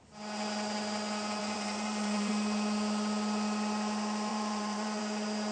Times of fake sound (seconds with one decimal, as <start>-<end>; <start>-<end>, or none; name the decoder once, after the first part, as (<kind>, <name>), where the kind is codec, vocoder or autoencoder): 1.4-2.3 (vocoder, Vocos); 4.3-5.0